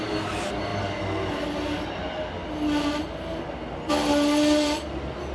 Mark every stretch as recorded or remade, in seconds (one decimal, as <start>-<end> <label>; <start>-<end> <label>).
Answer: 0.0-5.3 recorded